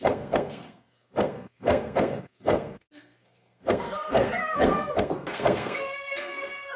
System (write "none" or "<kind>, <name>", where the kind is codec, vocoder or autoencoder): codec, SNAC